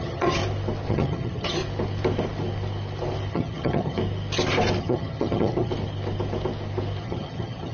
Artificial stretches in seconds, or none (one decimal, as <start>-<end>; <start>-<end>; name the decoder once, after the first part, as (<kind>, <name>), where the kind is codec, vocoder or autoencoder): 0.0-0.4 (vocoder, HiFi-GAN); 0.9-1.6; 3.3-4.0; 4.8-5.7; 7.0-7.7